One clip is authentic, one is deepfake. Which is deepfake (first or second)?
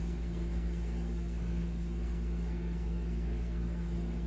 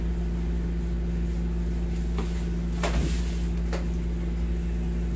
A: first